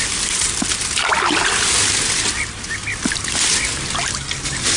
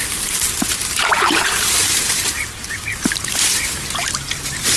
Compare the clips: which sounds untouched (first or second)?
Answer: first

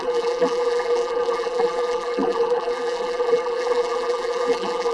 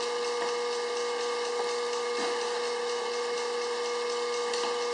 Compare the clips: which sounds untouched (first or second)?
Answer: second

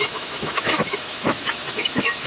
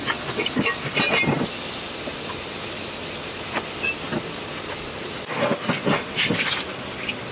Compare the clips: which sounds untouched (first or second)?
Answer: second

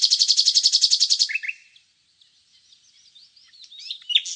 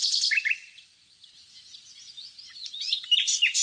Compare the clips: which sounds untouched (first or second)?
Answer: first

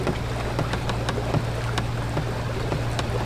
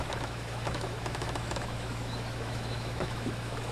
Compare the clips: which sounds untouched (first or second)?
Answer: first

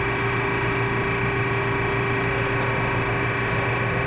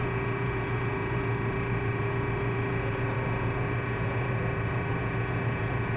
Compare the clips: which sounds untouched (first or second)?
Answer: first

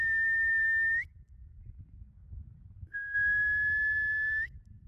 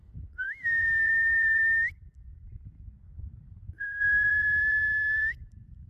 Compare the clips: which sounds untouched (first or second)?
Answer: first